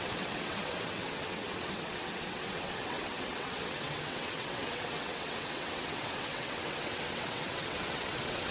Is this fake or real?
fake